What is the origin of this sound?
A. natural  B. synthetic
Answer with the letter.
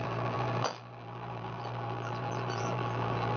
B